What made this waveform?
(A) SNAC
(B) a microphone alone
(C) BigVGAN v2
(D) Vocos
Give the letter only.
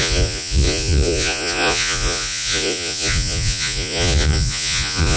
D